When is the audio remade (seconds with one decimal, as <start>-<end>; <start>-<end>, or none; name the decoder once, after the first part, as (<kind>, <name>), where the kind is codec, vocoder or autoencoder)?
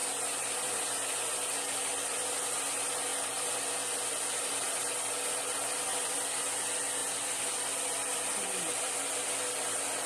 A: 0.0-0.7 (vocoder, BigVGAN v2); 7.0-9.1